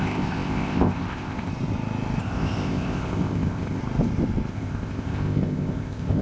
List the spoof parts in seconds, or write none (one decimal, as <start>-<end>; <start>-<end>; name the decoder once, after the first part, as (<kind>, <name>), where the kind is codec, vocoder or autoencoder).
0.0-1.5 (codec, ZipCodec); 2.2-3.8; 4.5-6.2